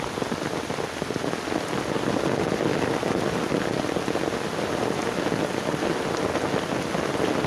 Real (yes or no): yes